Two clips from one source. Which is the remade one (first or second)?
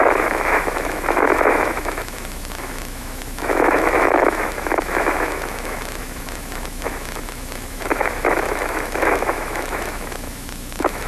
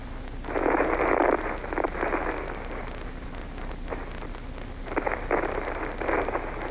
first